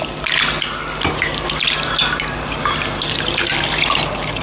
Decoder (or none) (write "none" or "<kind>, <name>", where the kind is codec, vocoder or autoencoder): none